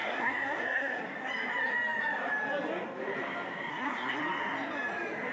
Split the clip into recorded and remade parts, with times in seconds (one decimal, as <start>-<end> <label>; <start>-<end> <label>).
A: 0.0-1.0 remade; 1.0-3.7 recorded; 3.7-4.2 remade; 4.2-5.3 recorded